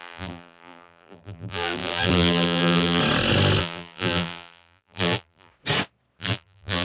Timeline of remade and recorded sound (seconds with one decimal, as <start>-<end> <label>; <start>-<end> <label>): 0.0-3.0 remade; 3.0-3.6 recorded; 3.6-5.5 remade; 5.5-6.2 recorded; 6.2-6.8 remade